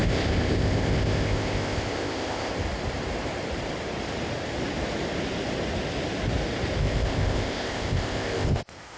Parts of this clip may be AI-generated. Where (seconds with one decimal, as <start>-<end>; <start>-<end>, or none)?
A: 0.0-2.5; 6.8-9.0